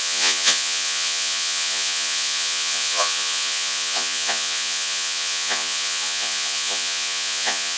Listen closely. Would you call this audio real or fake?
fake